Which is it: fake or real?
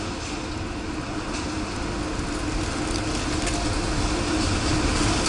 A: real